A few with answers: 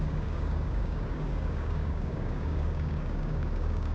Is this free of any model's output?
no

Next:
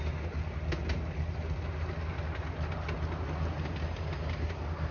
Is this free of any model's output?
yes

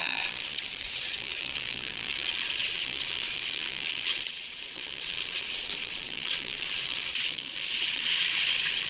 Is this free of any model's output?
no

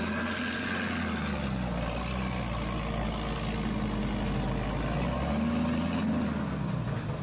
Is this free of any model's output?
yes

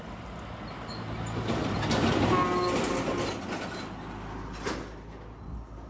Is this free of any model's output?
yes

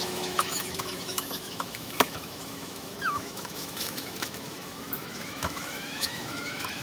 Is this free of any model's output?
no